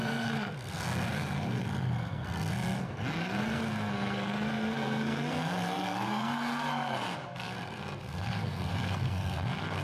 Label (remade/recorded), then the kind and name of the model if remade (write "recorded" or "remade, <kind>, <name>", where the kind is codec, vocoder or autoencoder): remade, codec, SNAC